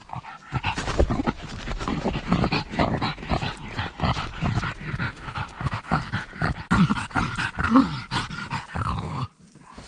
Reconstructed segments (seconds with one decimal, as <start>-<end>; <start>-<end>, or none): 5.0-6.0